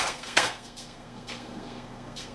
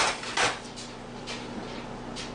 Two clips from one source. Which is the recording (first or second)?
second